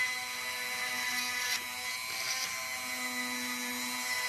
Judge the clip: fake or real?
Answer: real